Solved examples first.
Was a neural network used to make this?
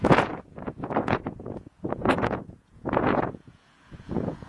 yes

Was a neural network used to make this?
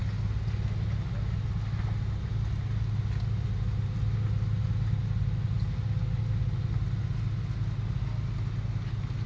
no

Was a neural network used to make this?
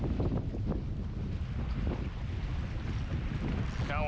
no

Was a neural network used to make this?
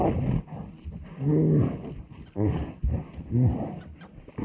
no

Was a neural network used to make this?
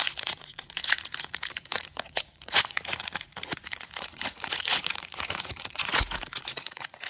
yes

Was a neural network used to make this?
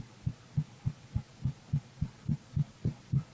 yes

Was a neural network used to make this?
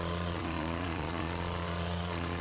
yes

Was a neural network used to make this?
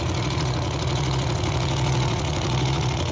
yes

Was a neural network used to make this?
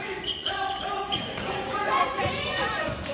yes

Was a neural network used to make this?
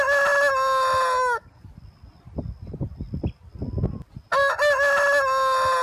no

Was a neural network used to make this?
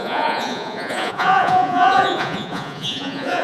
yes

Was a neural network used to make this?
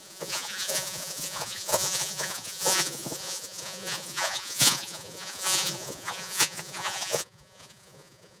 yes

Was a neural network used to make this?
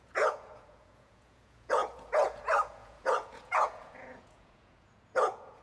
yes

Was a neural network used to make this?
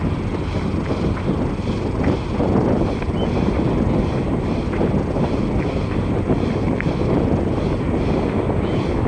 no